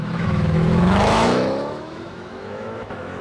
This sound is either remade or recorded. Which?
remade